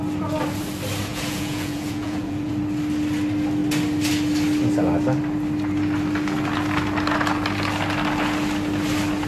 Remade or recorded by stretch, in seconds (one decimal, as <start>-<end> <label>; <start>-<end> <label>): 0.0-1.1 recorded; 1.1-2.5 remade; 2.5-9.3 recorded

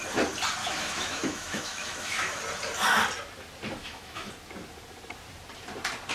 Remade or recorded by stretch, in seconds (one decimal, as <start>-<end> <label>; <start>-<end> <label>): 0.0-0.6 recorded; 0.6-2.4 remade; 2.4-3.8 recorded; 3.8-4.3 remade; 4.3-6.1 recorded

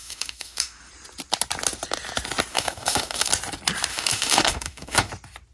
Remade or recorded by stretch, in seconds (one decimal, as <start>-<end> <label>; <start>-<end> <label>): 0.0-0.9 remade; 0.9-2.5 recorded; 2.5-3.3 remade; 3.3-3.9 recorded; 3.9-5.1 remade; 5.1-5.5 recorded